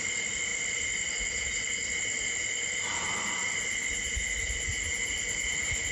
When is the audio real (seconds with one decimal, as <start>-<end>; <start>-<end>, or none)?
0.0-5.9

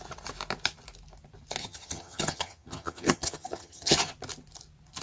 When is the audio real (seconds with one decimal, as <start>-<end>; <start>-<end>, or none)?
0.0-1.6; 4.1-5.0

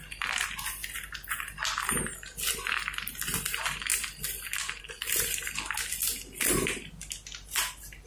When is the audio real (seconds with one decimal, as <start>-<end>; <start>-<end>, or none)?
0.0-8.1